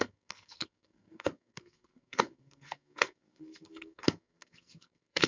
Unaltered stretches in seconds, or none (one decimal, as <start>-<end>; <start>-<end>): none